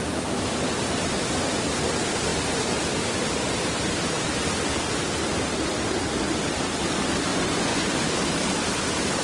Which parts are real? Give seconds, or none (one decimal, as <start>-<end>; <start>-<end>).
0.0-7.3; 8.0-9.2